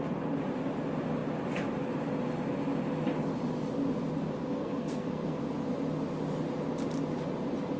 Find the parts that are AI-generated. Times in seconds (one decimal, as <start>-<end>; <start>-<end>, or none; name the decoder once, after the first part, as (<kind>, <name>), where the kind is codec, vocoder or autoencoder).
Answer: 4.4-5.4 (codec, SNAC)